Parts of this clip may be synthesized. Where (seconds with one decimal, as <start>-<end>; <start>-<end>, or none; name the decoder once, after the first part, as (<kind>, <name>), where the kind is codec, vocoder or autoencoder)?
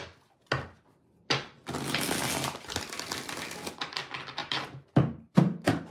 4.4-5.9 (vocoder, BigVGAN v2)